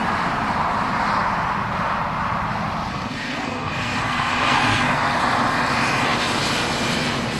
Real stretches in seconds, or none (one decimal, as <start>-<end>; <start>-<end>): 0.0-2.9; 5.2-7.4